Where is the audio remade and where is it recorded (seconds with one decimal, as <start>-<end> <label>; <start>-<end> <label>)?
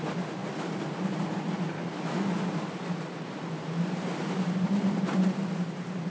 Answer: 0.0-6.1 recorded